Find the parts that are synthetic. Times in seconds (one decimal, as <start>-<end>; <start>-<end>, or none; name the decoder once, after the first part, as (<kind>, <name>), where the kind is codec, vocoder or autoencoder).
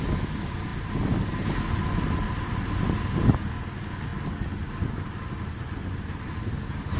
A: none